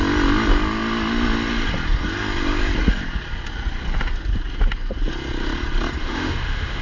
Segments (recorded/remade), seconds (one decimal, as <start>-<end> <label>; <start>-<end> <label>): 0.0-6.0 recorded; 6.0-6.8 remade